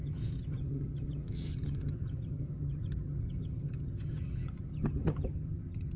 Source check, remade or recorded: remade